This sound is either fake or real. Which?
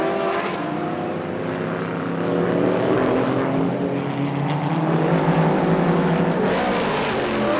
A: real